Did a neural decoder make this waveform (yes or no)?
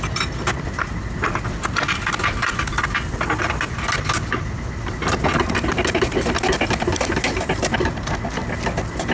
no